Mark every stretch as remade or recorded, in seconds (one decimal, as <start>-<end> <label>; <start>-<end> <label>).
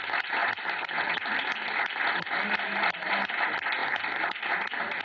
0.0-5.0 recorded